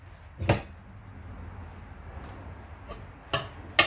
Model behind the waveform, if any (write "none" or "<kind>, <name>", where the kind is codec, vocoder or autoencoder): none